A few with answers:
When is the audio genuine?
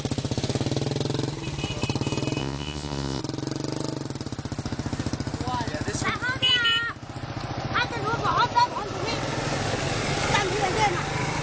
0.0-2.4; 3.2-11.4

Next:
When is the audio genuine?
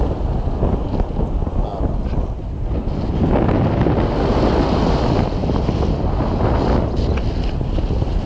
0.0-8.3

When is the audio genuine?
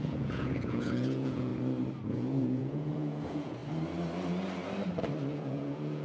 1.5-2.1; 3.6-5.3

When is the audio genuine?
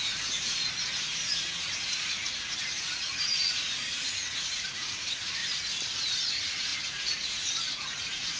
5.4-6.3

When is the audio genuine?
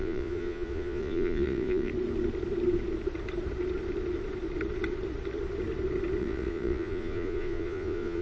1.9-6.2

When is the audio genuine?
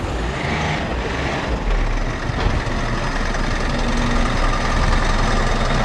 0.0-5.8